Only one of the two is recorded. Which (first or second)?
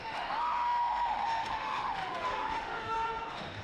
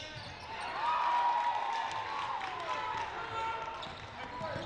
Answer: second